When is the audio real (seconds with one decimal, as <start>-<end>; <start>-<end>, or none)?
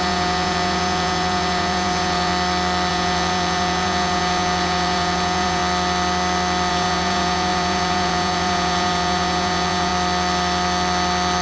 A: 2.3-2.9; 5.6-6.7; 9.9-11.4